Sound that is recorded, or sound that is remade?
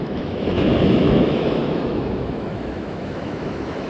remade